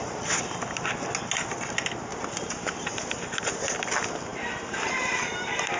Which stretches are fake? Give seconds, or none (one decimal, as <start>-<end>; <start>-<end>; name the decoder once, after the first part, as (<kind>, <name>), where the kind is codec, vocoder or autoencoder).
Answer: none